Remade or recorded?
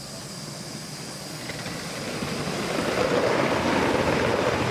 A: recorded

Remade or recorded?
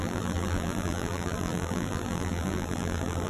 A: remade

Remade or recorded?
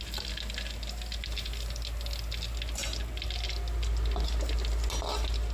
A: recorded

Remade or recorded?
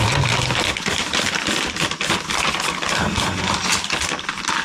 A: recorded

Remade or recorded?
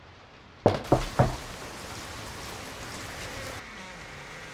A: recorded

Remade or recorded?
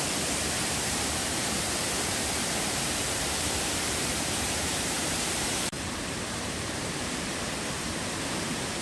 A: remade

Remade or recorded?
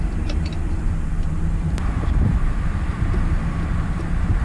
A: remade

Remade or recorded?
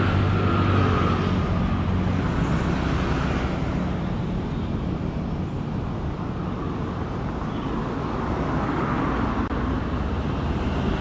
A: recorded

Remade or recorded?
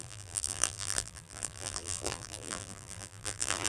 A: remade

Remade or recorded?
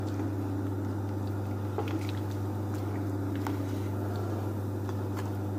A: recorded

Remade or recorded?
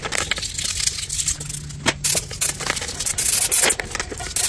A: recorded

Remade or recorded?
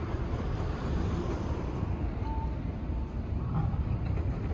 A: remade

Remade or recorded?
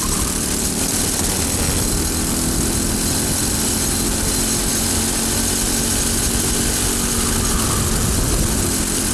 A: recorded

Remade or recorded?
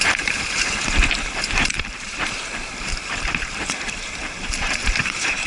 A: remade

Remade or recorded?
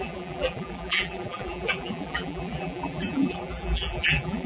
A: remade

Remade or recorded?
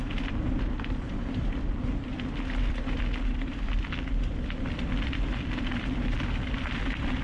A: remade